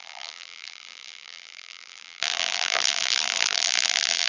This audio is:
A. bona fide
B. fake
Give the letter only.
B